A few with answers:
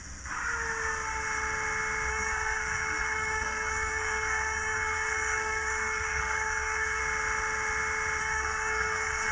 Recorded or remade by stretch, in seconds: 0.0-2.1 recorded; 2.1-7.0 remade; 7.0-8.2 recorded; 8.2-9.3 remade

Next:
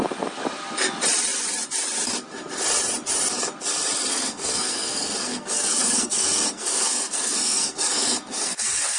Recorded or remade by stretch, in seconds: 0.0-4.1 recorded; 4.1-9.0 remade

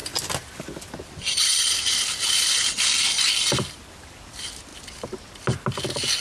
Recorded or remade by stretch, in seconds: 0.0-6.2 recorded

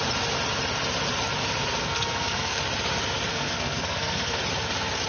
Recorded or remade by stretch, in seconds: 0.0-1.8 recorded; 1.8-2.6 remade; 2.6-3.3 recorded; 3.3-4.4 remade; 4.4-5.1 recorded

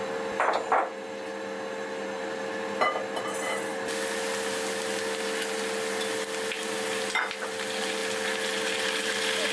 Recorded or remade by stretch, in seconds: 0.0-9.5 recorded